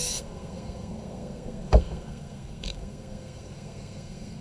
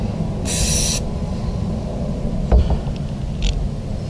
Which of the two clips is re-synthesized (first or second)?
first